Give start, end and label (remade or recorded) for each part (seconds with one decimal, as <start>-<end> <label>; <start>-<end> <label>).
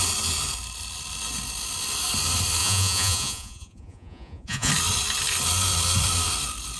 0.0-2.6 recorded; 2.6-4.7 remade; 4.7-6.8 recorded